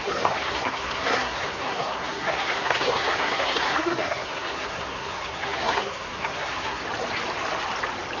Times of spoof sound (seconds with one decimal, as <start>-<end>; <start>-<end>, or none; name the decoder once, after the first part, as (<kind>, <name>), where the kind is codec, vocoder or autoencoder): 0.0-6.8 (codec, SNAC)